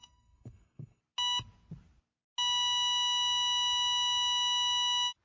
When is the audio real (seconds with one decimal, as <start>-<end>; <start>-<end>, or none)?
1.0-5.2